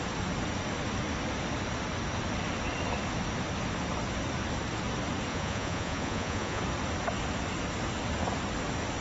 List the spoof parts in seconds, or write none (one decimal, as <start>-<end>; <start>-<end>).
5.3-6.6

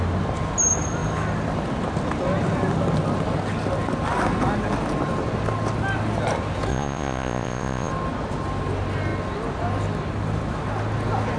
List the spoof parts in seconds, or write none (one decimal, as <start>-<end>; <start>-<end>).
6.7-7.9

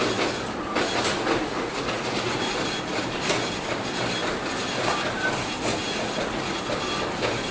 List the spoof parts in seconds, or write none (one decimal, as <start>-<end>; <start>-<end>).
1.4-2.4; 5.7-6.6

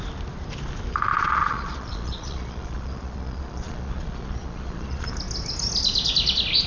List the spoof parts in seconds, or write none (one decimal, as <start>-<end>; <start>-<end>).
1.1-5.1

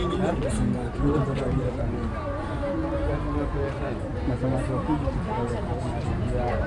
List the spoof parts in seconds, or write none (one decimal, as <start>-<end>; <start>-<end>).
none

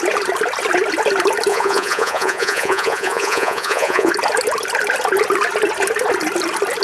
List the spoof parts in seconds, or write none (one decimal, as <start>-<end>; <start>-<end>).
1.5-4.1

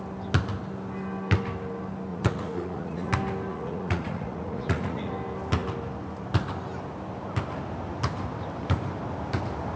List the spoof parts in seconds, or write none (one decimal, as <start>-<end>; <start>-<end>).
2.1-3.1; 3.5-5.1

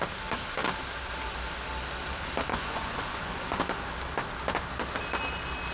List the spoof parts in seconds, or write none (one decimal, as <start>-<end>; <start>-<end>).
2.5-3.6